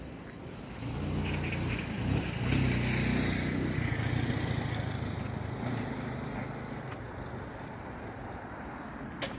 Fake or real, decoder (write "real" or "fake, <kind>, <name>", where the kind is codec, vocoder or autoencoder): real